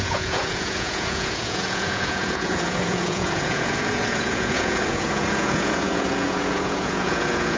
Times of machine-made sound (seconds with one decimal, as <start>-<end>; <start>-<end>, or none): 0.0-7.6